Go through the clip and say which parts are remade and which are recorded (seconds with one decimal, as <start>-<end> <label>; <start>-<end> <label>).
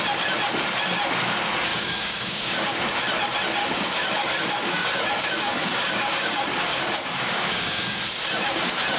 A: 0.0-1.7 recorded; 1.7-2.7 remade; 2.7-3.6 recorded; 3.6-8.0 remade; 8.0-9.0 recorded